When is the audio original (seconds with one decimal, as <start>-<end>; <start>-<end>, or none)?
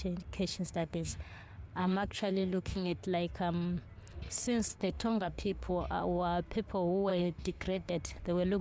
0.0-0.5; 1.2-1.8; 3.0-4.7; 5.7-7.1; 7.9-8.6